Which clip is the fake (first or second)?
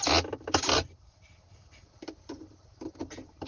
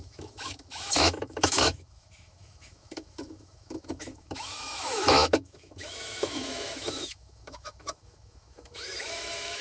second